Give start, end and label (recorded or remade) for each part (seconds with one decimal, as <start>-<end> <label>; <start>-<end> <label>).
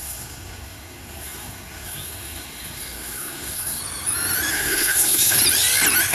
0.0-3.8 remade; 3.8-4.5 recorded; 4.5-5.4 remade; 5.4-6.1 recorded